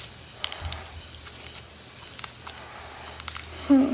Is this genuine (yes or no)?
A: yes